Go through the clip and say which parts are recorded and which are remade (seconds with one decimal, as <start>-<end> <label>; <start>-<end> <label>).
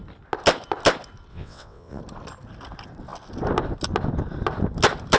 0.0-1.3 recorded; 1.3-2.0 remade; 2.0-5.2 recorded